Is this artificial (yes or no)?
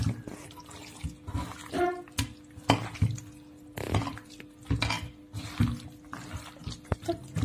no